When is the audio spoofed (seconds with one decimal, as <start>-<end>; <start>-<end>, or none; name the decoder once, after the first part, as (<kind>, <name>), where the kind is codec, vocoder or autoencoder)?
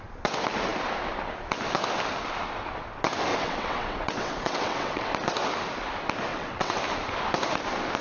3.3-5.1 (vocoder, WaveNeXt); 6.3-6.8